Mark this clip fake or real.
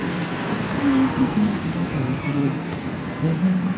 fake